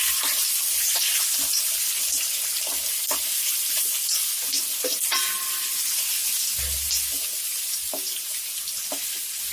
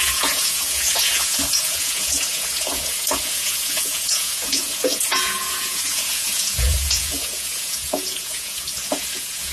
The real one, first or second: first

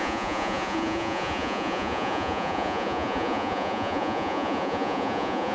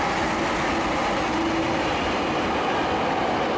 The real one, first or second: second